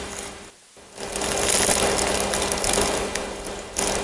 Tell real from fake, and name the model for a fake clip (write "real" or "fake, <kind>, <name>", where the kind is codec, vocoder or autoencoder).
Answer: real